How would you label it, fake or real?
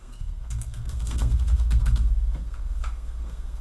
fake